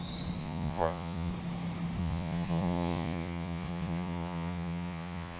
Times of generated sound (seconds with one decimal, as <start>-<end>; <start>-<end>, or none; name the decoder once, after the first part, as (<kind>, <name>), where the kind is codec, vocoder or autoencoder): 0.4-1.3 (vocoder, Vocos); 2.0-5.4